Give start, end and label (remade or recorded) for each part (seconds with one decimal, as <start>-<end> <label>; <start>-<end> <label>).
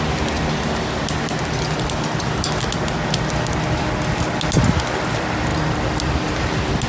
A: 0.0-5.5 recorded; 5.5-6.4 remade; 6.4-6.9 recorded